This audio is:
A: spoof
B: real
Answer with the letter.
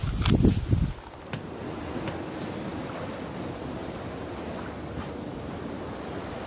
B